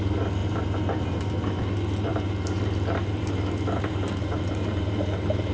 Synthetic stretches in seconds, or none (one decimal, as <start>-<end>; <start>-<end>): 0.4-1.6; 2.1-5.5